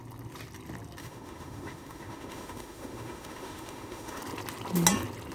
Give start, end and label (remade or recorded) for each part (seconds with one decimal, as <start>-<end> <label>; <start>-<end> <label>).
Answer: 0.0-1.0 recorded; 1.0-4.2 remade; 4.2-5.3 recorded